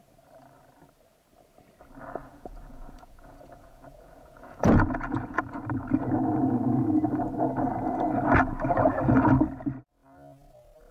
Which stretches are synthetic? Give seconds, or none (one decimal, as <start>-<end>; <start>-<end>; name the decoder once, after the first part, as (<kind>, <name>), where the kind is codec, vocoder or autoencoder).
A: 2.2-5.6 (vocoder, Vocos)